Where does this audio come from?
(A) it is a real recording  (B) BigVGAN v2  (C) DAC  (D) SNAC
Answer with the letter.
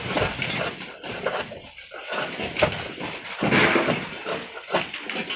A